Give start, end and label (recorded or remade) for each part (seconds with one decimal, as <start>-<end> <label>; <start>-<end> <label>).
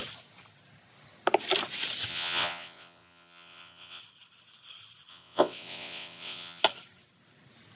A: 0.0-2.1 recorded; 2.1-4.0 remade; 4.0-5.1 recorded; 5.1-6.6 remade; 6.6-7.8 recorded